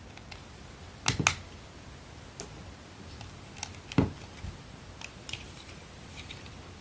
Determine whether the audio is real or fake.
real